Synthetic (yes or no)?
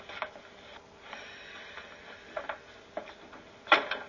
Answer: no